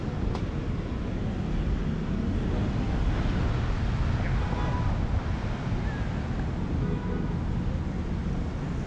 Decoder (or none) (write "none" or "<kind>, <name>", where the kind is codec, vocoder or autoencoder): none